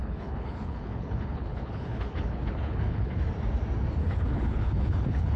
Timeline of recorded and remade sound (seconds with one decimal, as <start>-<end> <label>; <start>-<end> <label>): 0.0-3.2 remade; 3.2-4.0 recorded; 4.0-5.4 remade

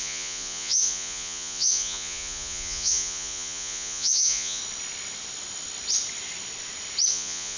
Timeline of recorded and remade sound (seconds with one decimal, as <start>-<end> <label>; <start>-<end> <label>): 0.0-4.6 remade; 4.6-7.1 recorded; 7.1-7.6 remade

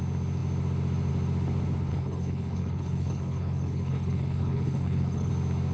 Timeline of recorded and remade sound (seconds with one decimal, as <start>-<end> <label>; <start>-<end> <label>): 0.0-1.9 recorded; 1.9-5.3 remade; 5.3-5.7 recorded